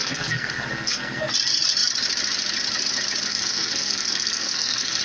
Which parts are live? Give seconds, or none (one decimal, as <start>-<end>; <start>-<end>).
1.3-3.3